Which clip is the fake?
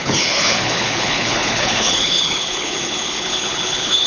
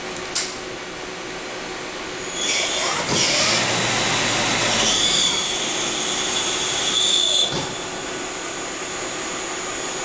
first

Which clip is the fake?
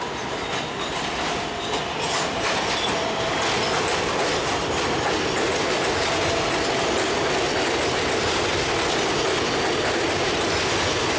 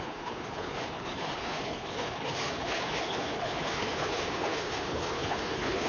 second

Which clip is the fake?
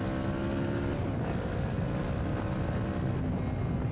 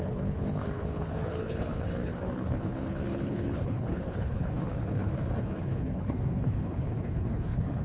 second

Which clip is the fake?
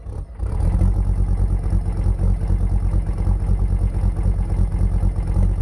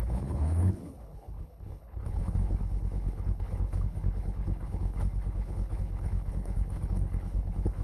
second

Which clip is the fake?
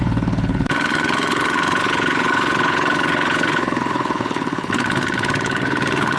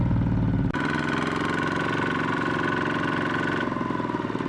first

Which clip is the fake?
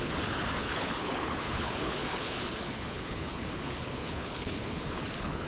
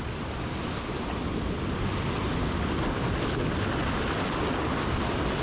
first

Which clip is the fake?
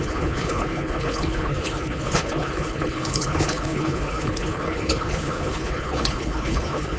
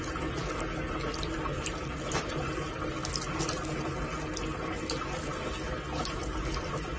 first